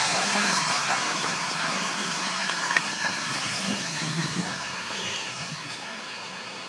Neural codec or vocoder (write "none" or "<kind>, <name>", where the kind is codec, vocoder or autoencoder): codec, SNAC